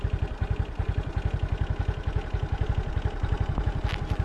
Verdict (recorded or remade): recorded